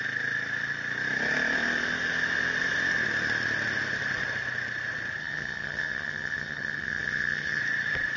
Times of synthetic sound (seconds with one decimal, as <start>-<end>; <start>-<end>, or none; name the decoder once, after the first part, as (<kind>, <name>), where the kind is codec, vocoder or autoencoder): 5.2-7.6 (vocoder, HiFi-GAN)